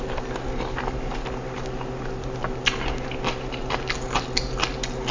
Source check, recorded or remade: recorded